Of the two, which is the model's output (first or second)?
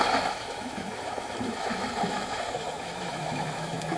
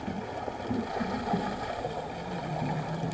first